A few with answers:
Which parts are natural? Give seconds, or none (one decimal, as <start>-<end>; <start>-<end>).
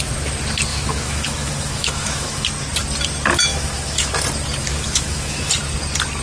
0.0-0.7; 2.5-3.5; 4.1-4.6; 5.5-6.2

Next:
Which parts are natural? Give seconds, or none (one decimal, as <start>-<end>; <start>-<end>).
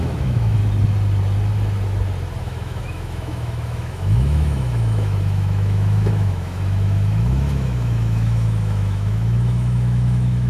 0.6-2.4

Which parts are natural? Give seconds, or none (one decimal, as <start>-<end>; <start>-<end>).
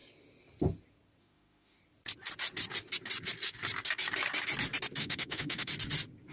0.0-1.2; 1.8-5.0; 5.7-6.3